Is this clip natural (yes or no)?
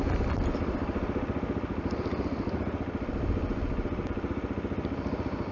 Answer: yes